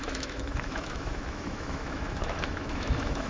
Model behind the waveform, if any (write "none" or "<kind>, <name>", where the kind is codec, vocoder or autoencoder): autoencoder, DAC-VAE